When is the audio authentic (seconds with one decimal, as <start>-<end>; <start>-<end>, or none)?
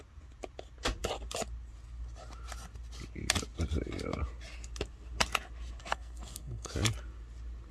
0.0-5.8; 6.7-7.7